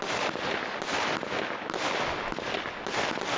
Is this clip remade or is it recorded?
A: recorded